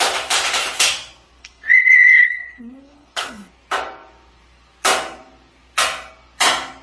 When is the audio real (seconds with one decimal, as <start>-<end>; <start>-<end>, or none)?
0.0-1.4; 3.5-6.8